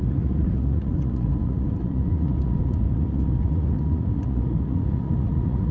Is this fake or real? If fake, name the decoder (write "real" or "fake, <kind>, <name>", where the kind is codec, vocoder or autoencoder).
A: fake, vocoder, Vocos